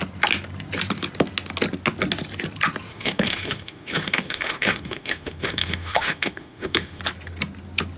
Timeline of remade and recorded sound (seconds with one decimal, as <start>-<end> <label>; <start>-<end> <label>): 0.0-2.9 recorded; 2.9-7.0 remade; 7.0-8.0 recorded